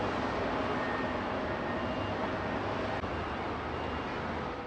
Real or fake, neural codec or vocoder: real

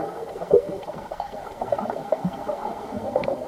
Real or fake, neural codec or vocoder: fake, codec, SNAC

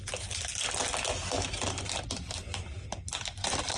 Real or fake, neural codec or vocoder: real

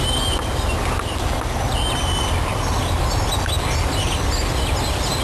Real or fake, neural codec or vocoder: real